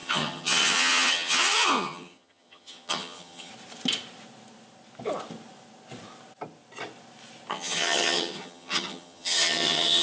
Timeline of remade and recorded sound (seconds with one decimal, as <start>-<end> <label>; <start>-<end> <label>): 0.0-3.5 remade; 3.5-7.5 recorded; 7.5-10.0 remade